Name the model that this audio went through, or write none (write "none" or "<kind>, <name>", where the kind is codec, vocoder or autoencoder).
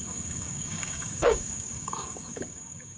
codec, DAC